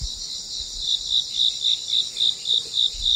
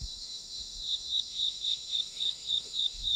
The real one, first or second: first